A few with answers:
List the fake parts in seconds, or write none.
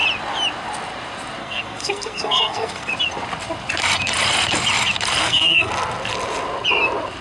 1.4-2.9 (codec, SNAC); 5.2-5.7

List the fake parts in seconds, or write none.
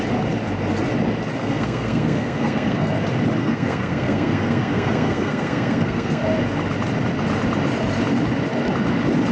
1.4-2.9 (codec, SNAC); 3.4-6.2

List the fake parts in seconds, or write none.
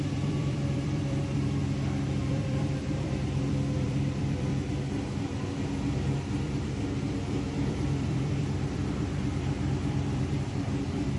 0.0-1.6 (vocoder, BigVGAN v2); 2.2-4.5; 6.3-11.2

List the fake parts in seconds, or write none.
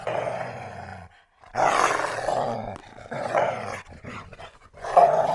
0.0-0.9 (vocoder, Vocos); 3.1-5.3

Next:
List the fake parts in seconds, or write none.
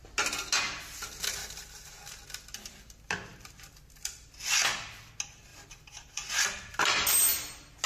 1.4-1.9 (vocoder, BigVGAN v2); 5.5-6.3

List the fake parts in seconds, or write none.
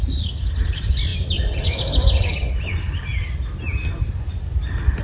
none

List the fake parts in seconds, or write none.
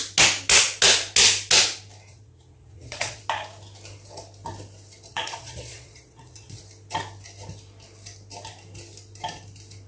2.1-3.2 (vocoder, Vocos); 5.1-6.6